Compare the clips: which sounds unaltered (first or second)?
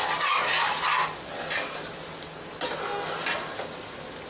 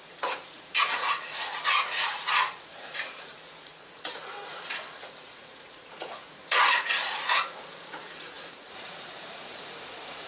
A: first